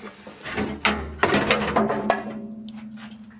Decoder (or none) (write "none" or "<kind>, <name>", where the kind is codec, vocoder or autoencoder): none